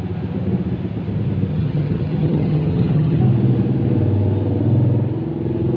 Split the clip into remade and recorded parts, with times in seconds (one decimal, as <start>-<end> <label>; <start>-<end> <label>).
0.0-1.5 recorded; 1.5-3.2 remade; 3.2-5.8 recorded